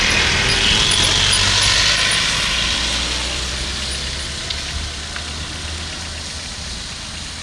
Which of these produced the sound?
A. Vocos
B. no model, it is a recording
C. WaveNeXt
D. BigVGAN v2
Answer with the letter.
B